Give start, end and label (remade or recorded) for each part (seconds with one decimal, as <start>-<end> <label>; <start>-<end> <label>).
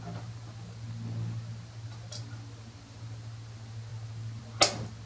0.0-5.1 recorded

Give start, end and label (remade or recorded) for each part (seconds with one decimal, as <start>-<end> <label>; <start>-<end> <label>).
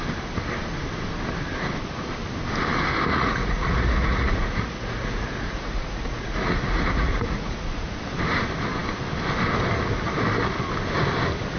0.0-3.1 recorded; 3.1-8.0 remade; 8.0-11.6 recorded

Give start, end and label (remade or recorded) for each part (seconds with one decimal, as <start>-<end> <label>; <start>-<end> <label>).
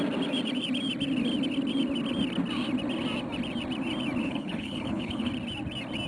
0.0-4.2 recorded; 4.2-5.3 remade; 5.3-6.1 recorded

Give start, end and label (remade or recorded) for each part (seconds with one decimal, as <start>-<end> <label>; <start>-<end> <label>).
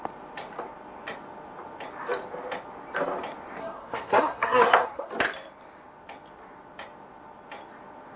0.0-3.6 recorded; 3.6-5.1 remade; 5.1-8.2 recorded